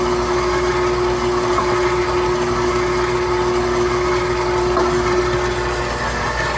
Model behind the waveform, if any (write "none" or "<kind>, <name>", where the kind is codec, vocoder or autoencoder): none